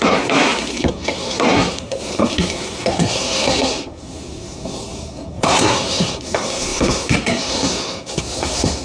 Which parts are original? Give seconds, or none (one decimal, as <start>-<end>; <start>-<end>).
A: none